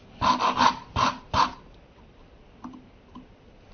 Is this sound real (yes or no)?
yes